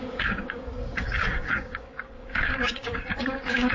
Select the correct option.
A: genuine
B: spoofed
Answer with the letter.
B